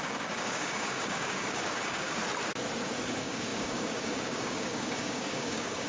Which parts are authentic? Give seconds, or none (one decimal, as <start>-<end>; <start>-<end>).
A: 2.2-3.0